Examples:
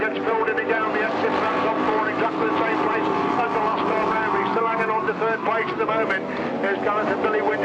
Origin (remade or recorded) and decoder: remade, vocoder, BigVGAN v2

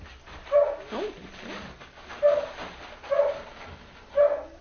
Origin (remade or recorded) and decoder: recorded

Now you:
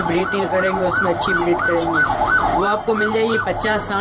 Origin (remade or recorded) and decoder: remade, vocoder, BigVGAN v2